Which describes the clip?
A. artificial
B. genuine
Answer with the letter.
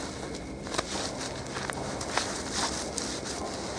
B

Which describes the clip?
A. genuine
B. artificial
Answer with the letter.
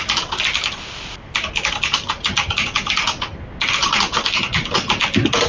A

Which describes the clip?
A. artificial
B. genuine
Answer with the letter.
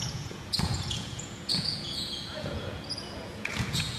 A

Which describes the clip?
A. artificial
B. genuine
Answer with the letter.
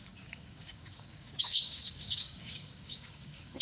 A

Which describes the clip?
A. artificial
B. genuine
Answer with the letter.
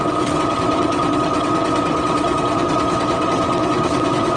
A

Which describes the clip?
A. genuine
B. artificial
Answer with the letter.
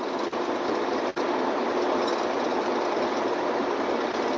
A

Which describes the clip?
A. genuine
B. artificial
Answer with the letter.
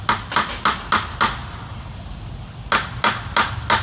A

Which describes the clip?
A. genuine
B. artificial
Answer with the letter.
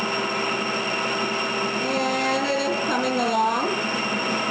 A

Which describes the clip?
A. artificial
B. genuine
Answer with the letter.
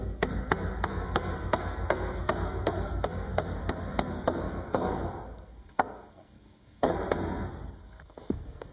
A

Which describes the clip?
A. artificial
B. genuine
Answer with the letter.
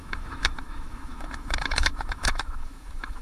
A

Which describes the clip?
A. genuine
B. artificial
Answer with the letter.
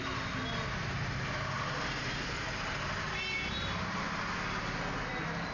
A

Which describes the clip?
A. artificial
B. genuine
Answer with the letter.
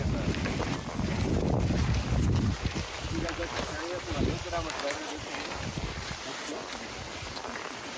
B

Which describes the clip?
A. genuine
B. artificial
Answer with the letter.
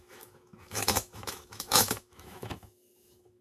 B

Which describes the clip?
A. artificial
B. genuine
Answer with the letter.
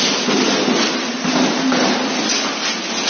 B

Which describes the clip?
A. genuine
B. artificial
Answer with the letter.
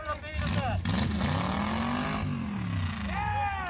A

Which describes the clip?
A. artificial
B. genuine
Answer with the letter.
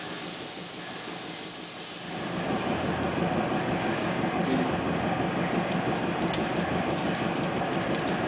B